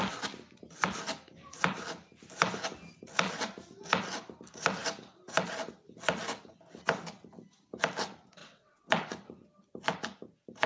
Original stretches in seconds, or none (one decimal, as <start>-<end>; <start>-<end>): 0.0-8.4; 8.9-10.7